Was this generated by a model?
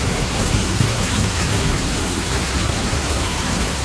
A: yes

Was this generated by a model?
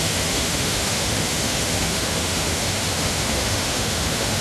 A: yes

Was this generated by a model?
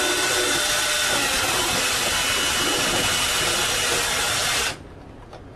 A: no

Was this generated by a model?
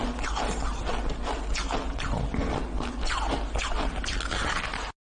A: no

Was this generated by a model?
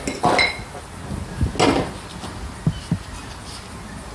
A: no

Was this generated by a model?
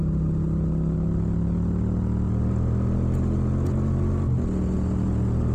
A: no